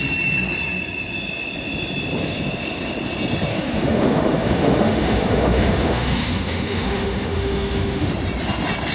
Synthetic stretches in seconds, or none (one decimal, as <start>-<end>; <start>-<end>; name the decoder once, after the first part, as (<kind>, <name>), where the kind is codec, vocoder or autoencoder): 3.5-8.1 (autoencoder, DAC-VAE)